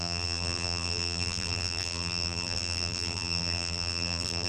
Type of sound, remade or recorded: remade